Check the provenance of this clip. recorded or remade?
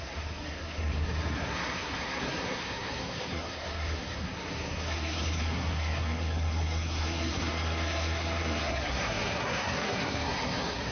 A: remade